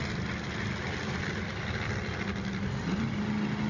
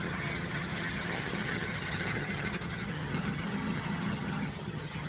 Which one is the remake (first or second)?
second